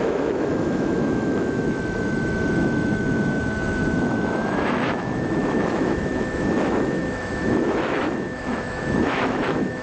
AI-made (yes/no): yes